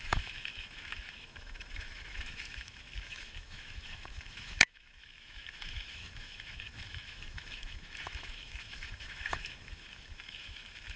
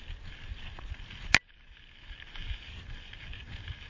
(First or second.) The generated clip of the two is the first